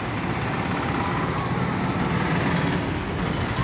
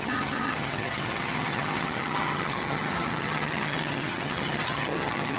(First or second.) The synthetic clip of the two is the second